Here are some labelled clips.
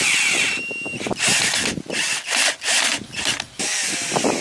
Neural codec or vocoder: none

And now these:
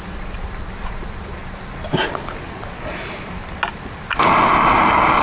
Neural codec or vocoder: none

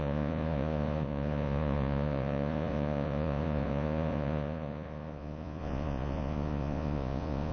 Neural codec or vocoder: vocoder, Vocos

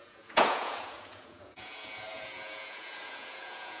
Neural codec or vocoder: vocoder, Vocos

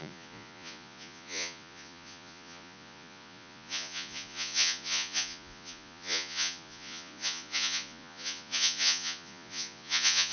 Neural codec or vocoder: vocoder, Vocos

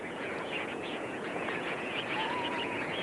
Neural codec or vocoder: vocoder, Vocos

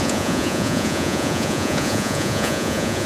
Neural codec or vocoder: vocoder, Vocos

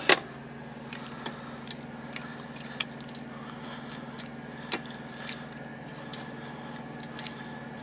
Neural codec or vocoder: none